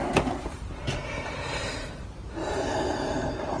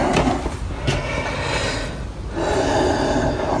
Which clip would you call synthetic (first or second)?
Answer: first